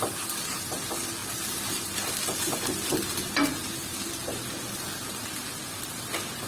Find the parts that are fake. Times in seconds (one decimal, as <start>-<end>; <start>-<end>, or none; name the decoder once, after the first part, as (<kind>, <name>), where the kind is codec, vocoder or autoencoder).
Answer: none